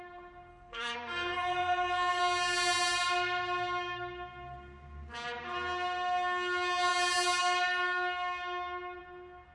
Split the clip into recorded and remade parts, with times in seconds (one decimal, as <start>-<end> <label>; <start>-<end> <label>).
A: 0.0-0.5 recorded; 0.5-2.2 remade; 2.2-9.5 recorded